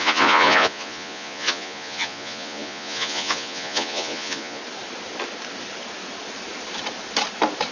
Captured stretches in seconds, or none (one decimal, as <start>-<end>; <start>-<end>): 4.6-7.7